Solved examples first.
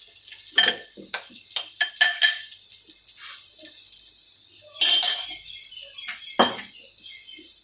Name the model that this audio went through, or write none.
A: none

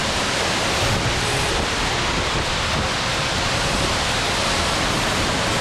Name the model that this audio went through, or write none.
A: vocoder, BigVGAN v2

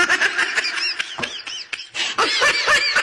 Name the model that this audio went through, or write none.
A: none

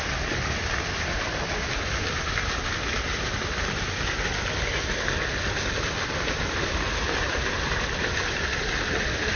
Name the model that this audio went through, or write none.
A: none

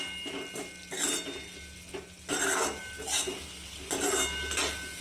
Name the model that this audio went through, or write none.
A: none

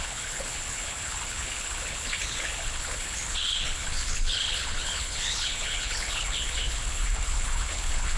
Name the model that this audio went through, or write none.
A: codec, HILCodec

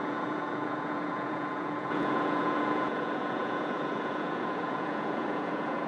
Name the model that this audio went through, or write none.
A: vocoder, Vocos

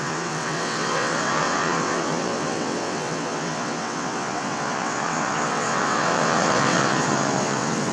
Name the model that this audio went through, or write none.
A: vocoder, WaveNeXt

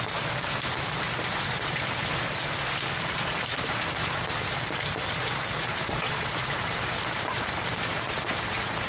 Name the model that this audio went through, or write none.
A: vocoder, BigVGAN v2